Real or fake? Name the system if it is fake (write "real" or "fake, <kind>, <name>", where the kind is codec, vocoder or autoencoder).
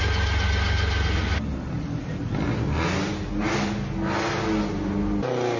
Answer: real